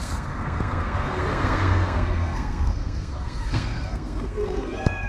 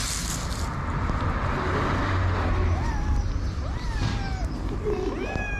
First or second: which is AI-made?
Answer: first